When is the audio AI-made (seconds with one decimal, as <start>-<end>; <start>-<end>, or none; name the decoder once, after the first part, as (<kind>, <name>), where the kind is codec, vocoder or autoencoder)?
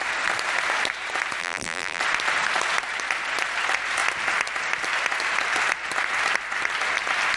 1.4-2.0 (vocoder, BigVGAN v2)